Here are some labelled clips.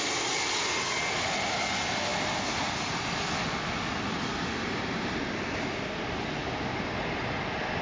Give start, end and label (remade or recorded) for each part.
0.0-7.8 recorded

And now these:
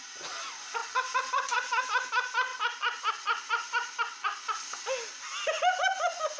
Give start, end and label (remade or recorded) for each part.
0.0-6.4 recorded

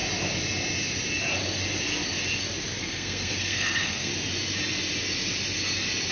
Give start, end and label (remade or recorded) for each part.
0.0-2.8 recorded; 2.8-4.1 remade; 4.1-6.1 recorded

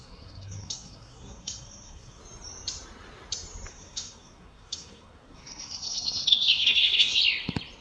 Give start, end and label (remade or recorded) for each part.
0.0-2.2 remade; 2.2-3.7 recorded; 3.7-7.2 remade; 7.2-7.8 recorded

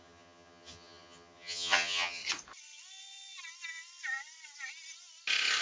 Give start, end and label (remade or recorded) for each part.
0.0-2.2 remade; 2.2-5.6 recorded